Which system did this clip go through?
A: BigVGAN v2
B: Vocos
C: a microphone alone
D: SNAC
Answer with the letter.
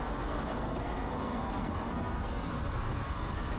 D